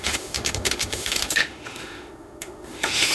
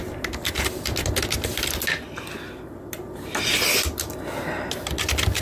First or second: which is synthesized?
first